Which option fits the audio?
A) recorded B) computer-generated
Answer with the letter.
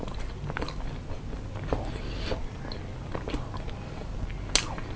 A